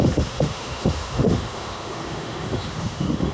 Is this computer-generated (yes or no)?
yes